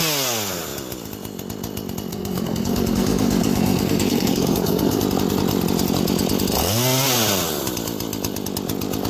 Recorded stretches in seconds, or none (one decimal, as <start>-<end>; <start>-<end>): 0.0-2.1; 5.0-9.1